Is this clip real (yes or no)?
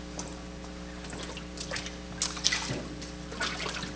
yes